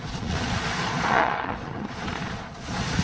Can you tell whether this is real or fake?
fake